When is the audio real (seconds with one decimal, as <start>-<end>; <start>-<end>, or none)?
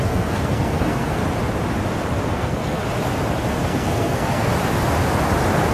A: 1.2-2.3; 2.8-3.5; 4.5-5.7